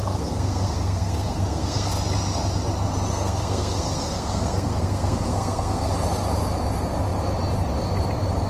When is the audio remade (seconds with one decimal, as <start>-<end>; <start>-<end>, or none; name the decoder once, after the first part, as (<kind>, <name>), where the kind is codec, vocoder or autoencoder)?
0.0-1.9 (codec, SNAC); 3.1-5.9